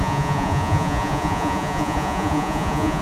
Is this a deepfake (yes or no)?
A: yes